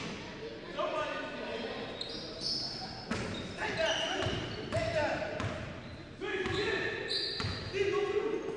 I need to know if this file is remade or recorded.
recorded